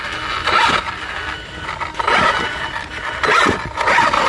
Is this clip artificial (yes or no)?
no